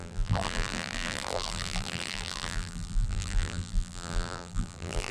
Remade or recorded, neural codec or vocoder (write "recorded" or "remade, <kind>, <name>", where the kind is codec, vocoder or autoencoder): remade, vocoder, BigVGAN v2